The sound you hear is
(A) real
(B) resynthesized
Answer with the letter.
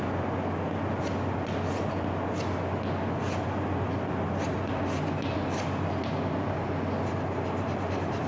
A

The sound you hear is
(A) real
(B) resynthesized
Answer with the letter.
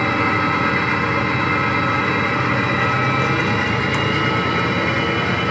A